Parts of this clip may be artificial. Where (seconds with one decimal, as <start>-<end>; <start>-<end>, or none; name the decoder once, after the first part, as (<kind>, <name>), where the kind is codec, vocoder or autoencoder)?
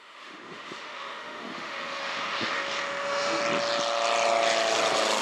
0.0-3.4 (autoencoder, DAC-VAE)